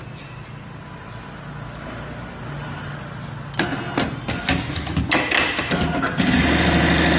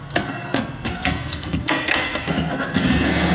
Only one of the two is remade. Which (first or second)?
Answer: second